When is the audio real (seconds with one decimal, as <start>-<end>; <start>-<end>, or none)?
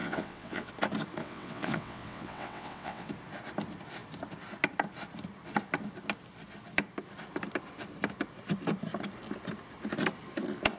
0.7-1.2; 3.1-10.8